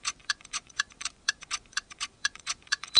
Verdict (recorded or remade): remade